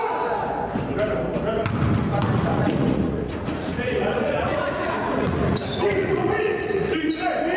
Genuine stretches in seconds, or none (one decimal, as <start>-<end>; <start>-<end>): 0.0-2.5; 7.1-7.6